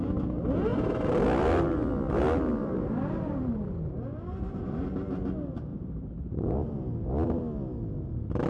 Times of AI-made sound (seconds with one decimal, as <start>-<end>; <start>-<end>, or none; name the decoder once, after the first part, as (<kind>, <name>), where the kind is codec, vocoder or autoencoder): 2.6-3.5 (vocoder, BigVGAN v2); 4.1-5.3; 5.7-7.1